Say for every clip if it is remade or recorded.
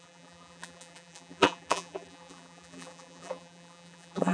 remade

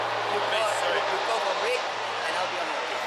recorded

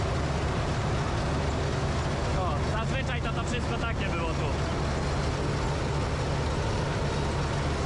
recorded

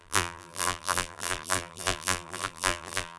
remade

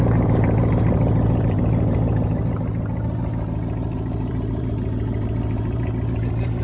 remade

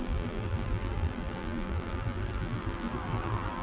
remade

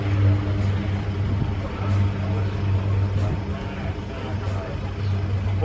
recorded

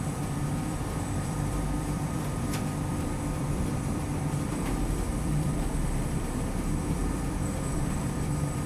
remade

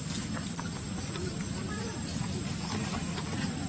recorded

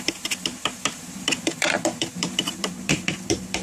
remade